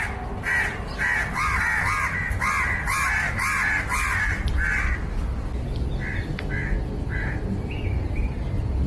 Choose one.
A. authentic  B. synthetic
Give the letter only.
A